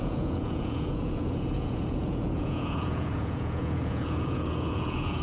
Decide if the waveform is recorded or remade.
remade